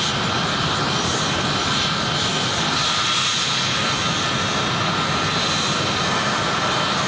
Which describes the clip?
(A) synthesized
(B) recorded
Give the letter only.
B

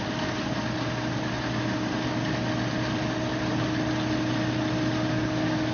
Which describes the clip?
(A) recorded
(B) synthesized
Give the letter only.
A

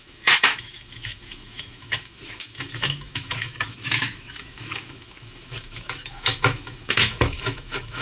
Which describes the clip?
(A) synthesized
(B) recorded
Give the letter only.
A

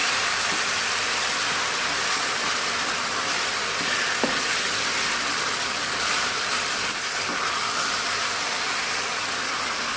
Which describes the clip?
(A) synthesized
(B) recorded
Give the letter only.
A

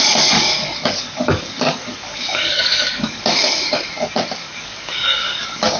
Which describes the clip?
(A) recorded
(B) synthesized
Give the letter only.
B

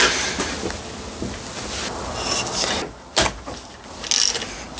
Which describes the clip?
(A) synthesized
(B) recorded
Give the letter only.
B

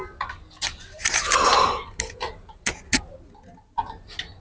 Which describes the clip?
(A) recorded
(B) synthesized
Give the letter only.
A